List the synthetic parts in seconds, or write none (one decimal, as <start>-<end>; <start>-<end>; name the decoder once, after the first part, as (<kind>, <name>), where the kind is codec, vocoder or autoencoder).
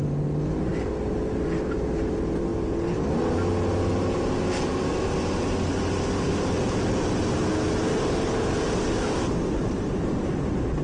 none